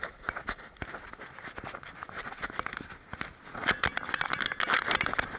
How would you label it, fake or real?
real